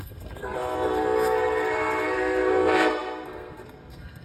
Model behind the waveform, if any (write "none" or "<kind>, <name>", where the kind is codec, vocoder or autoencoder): codec, SNAC